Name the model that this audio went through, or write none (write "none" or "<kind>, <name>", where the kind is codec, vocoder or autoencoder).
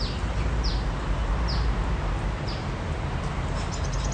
none